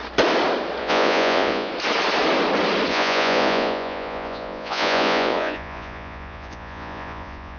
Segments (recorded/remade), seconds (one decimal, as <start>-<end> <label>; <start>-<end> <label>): 0.0-0.8 recorded; 0.8-1.7 remade; 1.7-2.9 recorded; 2.9-7.6 remade

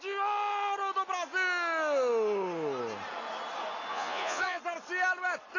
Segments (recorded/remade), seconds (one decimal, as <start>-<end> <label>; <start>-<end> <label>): 0.0-3.9 recorded; 3.9-4.6 remade; 4.6-5.6 recorded

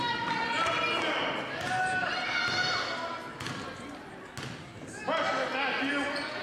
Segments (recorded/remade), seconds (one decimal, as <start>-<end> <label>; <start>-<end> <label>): 0.0-6.4 recorded

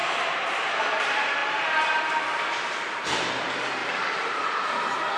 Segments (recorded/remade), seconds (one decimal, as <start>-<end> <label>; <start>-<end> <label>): 0.0-0.8 remade; 0.8-3.8 recorded; 3.8-4.7 remade; 4.7-5.2 recorded